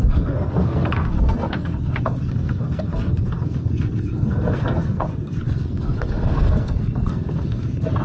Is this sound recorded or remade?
remade